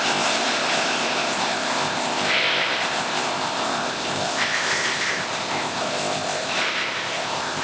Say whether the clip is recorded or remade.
remade